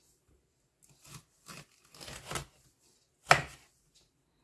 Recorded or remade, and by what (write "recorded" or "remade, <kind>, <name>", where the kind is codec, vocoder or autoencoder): recorded